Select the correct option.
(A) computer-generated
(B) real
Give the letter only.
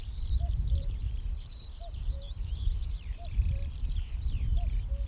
A